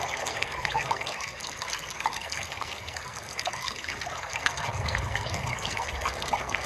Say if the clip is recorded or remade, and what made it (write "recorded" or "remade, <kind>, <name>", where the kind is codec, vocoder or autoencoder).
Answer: remade, codec, SNAC